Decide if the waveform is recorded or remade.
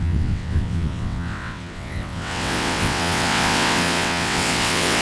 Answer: remade